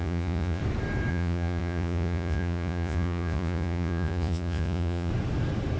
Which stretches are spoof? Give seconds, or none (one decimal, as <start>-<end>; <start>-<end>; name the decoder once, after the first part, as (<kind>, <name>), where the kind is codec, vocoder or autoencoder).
0.0-0.6 (vocoder, Vocos); 1.1-5.1